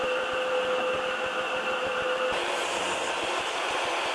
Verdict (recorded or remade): recorded